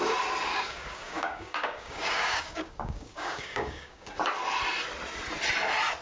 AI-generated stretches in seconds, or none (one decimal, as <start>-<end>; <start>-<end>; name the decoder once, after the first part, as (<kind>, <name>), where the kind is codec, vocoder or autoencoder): 0.5-4.1 (codec, DAC)